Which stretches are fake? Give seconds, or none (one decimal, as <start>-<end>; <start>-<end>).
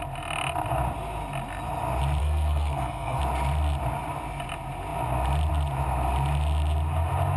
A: 2.2-3.2